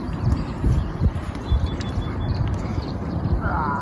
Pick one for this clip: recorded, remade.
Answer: remade